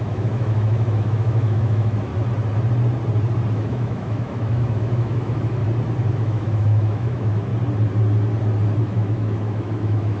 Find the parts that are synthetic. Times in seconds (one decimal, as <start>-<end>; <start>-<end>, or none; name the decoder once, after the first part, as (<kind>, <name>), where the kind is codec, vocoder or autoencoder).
0.0-2.1 (autoencoder, DAC-VAE); 3.5-5.6; 6.1-7.5; 8.8-10.2